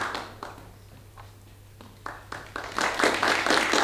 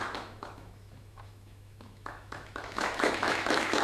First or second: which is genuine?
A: first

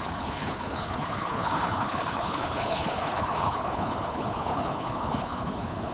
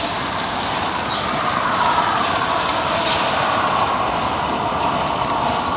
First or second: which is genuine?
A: second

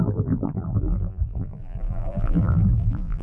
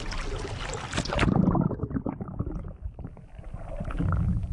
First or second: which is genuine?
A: second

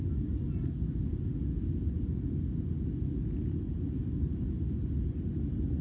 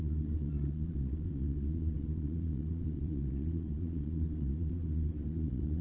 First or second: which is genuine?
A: first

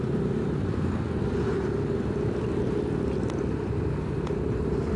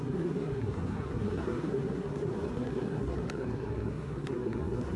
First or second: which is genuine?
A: first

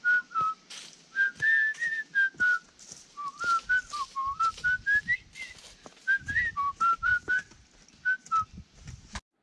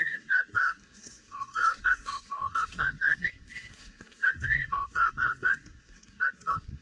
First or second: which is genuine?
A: first